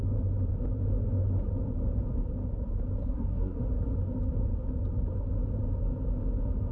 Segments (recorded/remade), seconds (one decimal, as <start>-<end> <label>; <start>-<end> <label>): 0.0-3.0 recorded; 3.0-3.6 remade; 3.6-6.7 recorded

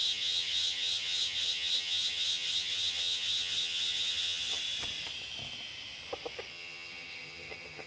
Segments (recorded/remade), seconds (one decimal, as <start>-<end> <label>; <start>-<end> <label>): 0.0-4.6 remade; 4.6-6.5 recorded; 6.5-7.9 remade

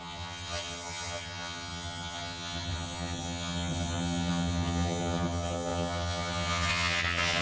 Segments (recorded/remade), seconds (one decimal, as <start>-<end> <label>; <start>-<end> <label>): 0.0-7.4 remade

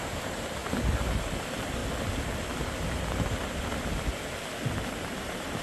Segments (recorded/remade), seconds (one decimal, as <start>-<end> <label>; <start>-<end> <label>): 0.0-0.6 remade; 0.6-1.2 recorded; 1.2-1.8 remade; 1.8-4.7 recorded; 4.7-5.6 remade

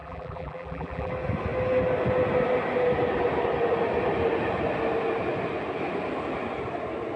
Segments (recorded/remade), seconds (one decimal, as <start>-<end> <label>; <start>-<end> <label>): 0.0-1.1 remade; 1.1-7.2 recorded

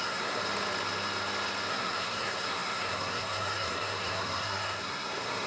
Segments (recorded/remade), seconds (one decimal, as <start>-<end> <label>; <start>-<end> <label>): 0.0-0.4 remade; 0.4-1.7 recorded; 1.7-5.5 remade

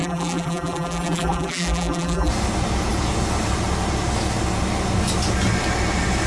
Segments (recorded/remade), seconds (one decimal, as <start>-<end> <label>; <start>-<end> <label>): 0.0-2.3 remade; 2.3-6.3 recorded